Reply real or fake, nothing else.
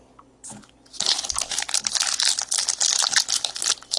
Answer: real